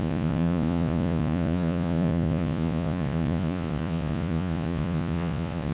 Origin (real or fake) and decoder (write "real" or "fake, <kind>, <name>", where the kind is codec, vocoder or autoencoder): fake, vocoder, Vocos